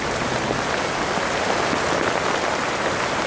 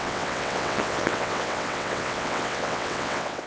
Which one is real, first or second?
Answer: first